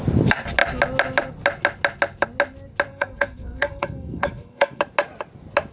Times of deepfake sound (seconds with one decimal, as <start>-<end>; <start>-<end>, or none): 2.9-4.8

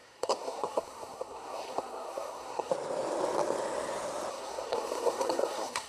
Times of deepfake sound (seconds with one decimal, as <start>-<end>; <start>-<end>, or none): 0.0-2.7; 4.3-5.9

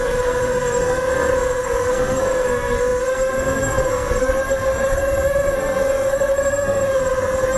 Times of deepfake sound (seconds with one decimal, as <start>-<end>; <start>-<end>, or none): 0.0-7.6

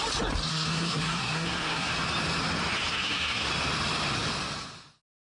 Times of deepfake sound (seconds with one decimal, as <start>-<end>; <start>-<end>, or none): 0.5-1.9; 2.9-3.5

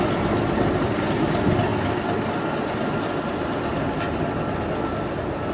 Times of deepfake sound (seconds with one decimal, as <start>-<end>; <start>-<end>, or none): none

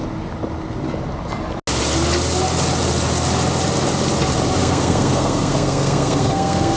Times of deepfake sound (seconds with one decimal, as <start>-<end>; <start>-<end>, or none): 4.6-6.8

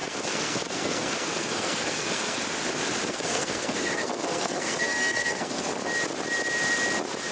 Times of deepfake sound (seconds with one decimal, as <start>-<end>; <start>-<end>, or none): 0.0-2.4; 3.1-5.7